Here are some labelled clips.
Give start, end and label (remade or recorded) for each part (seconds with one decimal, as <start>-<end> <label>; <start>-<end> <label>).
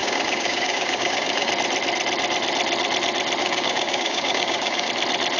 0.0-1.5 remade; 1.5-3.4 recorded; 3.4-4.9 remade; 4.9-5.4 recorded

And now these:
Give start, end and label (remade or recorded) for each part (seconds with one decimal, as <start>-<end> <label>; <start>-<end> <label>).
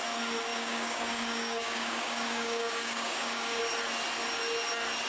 0.0-0.5 recorded; 0.5-3.6 remade; 3.6-5.1 recorded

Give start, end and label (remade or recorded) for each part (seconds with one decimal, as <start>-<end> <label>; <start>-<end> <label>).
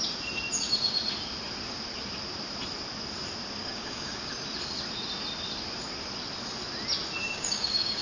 0.0-3.6 recorded; 3.6-4.3 remade; 4.3-7.2 recorded; 7.2-8.0 remade